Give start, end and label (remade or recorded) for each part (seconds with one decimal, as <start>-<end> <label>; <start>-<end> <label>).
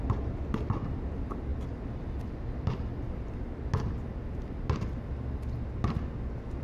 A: 0.0-6.6 recorded